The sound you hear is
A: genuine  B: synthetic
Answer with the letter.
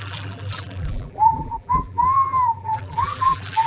B